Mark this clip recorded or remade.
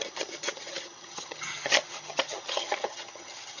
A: remade